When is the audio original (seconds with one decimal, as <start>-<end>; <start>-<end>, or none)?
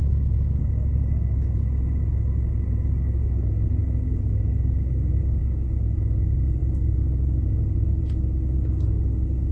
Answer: 0.0-9.5